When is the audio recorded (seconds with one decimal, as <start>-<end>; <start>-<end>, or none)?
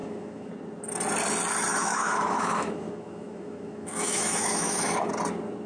0.5-1.7; 5.1-5.7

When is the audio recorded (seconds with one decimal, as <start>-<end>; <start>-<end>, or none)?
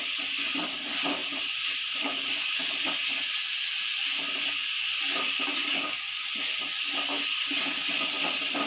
0.0-1.2; 2.1-8.7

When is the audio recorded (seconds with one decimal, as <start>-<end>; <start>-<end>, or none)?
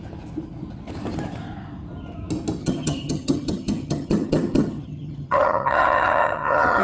0.0-2.6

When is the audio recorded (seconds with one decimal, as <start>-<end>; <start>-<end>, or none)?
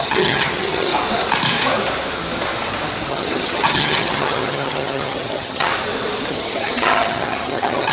0.9-3.1; 5.7-6.3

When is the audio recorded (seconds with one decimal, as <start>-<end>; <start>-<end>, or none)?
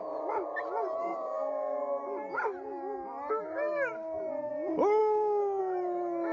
0.0-1.0; 1.8-5.0; 5.6-6.3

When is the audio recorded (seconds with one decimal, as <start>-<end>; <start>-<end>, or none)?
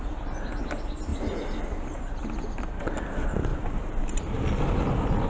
0.0-5.3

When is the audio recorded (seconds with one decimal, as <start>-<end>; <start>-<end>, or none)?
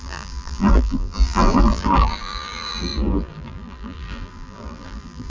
none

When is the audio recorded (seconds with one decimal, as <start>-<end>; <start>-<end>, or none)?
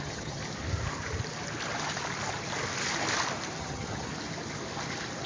0.4-3.6; 4.1-5.3